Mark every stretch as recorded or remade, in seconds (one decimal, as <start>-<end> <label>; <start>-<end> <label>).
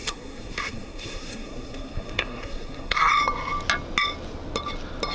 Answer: 0.0-3.1 remade; 3.1-5.1 recorded